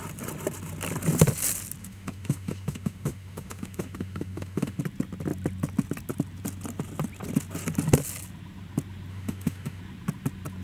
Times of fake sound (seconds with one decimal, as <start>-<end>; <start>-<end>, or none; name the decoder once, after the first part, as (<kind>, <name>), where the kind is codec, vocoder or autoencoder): 1.8-4.8 (autoencoder, DAC-VAE); 9.1-9.8